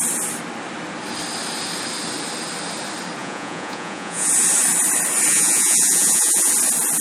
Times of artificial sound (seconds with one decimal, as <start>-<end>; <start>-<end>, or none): 3.2-4.3; 5.3-6.5